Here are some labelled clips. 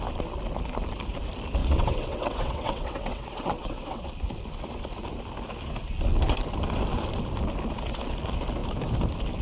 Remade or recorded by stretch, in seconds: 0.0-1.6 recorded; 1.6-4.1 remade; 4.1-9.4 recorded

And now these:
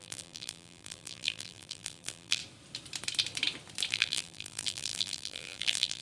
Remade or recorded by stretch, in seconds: 0.0-2.4 remade; 2.4-3.9 recorded; 3.9-6.0 remade

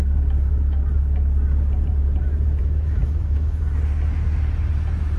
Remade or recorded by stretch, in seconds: 0.0-2.6 recorded; 2.6-3.6 remade; 3.6-5.2 recorded

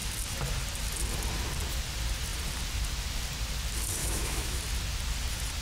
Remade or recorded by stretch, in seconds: 0.0-4.0 recorded; 4.0-4.6 remade; 4.6-5.6 recorded

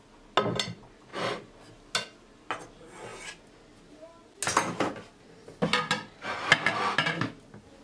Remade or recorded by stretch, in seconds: 0.0-7.8 recorded

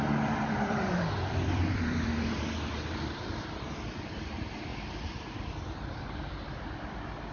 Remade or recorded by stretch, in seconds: 0.0-4.7 remade; 4.7-6.0 recorded; 6.0-7.3 remade